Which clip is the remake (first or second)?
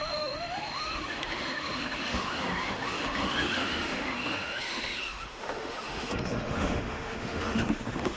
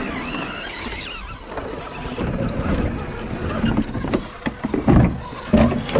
first